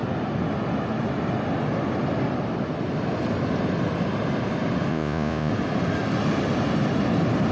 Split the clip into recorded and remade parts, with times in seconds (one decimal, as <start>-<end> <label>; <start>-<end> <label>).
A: 0.0-4.9 recorded; 4.9-5.5 remade; 5.5-7.5 recorded